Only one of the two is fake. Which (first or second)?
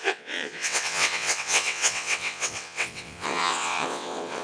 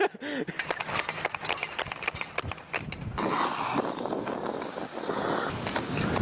first